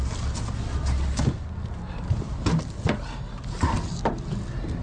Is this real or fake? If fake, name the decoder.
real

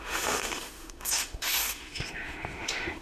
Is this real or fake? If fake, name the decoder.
fake, autoencoder, DAC-VAE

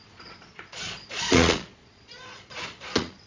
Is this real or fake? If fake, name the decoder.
fake, vocoder, Vocos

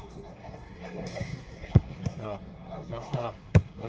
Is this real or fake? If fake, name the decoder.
fake, codec, SNAC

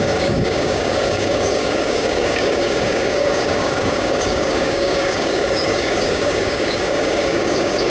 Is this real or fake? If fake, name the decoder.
fake, codec, DAC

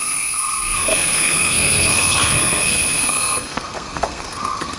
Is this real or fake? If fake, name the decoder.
fake, codec, SNAC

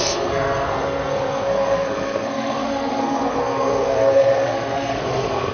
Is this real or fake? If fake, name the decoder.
fake, codec, SNAC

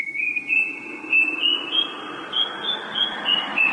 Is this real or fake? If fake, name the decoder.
real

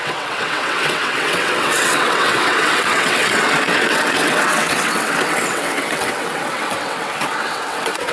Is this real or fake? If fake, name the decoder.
fake, vocoder, WaveNeXt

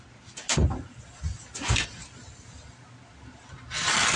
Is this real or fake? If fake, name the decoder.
real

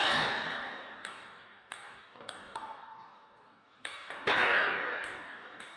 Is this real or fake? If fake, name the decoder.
fake, codec, DAC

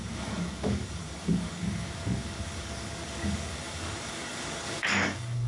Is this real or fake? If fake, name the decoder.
fake, codec, DAC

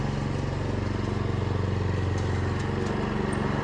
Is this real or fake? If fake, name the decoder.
real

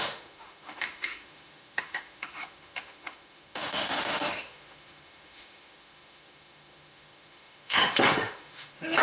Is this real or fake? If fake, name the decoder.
fake, autoencoder, DAC-VAE